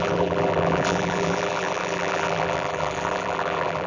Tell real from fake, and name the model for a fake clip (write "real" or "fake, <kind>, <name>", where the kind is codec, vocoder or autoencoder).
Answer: fake, vocoder, BigVGAN v2